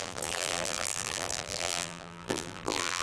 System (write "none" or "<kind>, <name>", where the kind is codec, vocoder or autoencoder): vocoder, BigVGAN v2